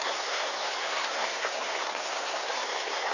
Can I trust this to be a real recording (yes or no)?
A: no